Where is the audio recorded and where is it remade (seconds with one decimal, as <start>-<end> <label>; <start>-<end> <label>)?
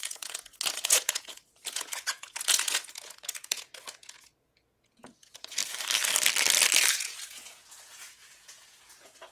0.0-5.6 remade; 5.6-6.9 recorded; 6.9-9.3 remade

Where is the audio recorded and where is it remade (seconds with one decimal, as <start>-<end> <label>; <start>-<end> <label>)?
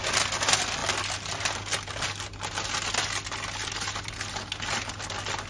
0.0-5.5 recorded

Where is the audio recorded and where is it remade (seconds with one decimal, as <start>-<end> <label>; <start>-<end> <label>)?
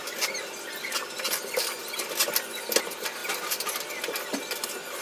0.0-5.0 recorded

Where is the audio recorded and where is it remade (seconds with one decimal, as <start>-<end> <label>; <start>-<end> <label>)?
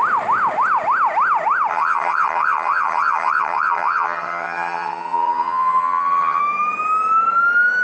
0.0-1.7 recorded; 1.7-6.4 remade; 6.4-7.8 recorded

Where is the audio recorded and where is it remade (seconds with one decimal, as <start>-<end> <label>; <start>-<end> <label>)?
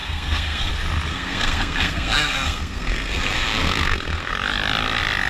0.0-0.7 remade; 0.7-1.1 recorded; 1.1-4.3 remade; 4.3-5.3 recorded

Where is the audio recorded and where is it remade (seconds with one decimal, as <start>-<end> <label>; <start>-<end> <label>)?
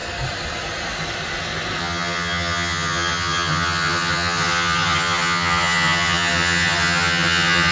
0.0-1.8 recorded; 1.8-7.7 remade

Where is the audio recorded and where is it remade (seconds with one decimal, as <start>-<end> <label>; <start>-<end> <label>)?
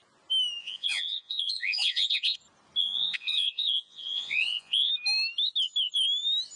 0.0-0.6 recorded; 0.6-2.4 remade; 2.4-2.8 recorded; 2.8-4.9 remade; 4.9-6.6 recorded